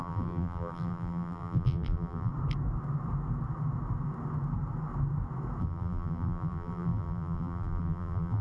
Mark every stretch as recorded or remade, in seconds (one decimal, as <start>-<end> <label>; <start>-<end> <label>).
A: 0.0-2.3 remade; 2.3-5.6 recorded; 5.6-8.4 remade